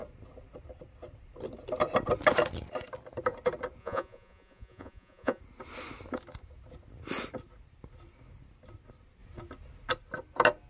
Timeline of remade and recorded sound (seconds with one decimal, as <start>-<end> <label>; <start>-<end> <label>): 0.0-3.8 recorded; 3.8-5.4 remade; 5.4-10.7 recorded